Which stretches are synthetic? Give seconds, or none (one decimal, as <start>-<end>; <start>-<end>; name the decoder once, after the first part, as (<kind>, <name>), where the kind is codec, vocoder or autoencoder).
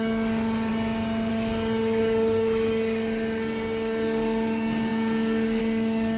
0.0-0.7 (codec, DAC); 1.3-6.2